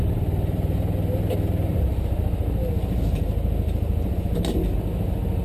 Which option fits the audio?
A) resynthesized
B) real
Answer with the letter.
B